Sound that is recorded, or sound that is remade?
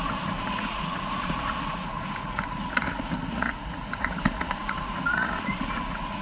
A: remade